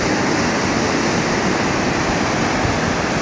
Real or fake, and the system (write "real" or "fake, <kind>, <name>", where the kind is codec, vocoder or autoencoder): real